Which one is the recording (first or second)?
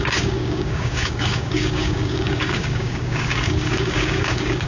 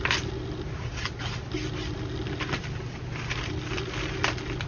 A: second